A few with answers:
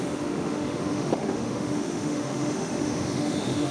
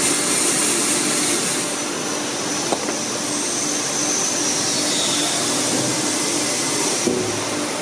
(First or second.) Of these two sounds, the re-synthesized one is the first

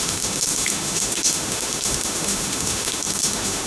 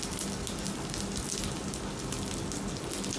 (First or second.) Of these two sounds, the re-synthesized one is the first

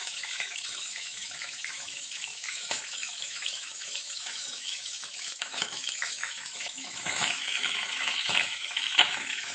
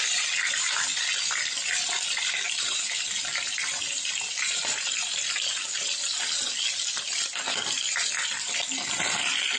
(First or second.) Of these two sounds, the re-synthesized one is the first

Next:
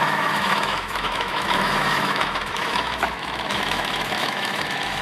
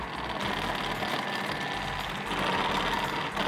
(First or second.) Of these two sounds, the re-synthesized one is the first